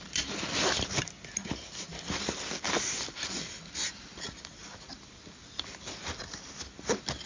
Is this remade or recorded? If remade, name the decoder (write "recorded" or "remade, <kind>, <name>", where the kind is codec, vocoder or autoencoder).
recorded